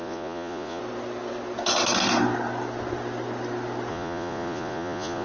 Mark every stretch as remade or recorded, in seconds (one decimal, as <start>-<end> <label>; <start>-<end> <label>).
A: 0.0-0.8 remade; 0.8-3.9 recorded; 3.9-5.2 remade